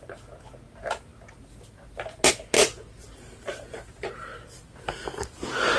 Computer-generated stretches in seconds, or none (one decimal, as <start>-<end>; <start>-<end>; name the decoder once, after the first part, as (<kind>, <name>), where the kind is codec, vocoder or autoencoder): none